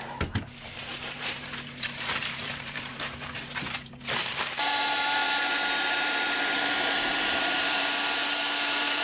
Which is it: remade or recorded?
remade